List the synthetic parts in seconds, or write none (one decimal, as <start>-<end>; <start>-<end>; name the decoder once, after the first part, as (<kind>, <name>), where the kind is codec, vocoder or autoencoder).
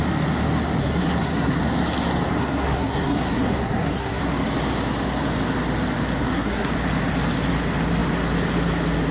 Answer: 0.8-1.6 (codec, SNAC); 2.4-4.2; 6.2-6.7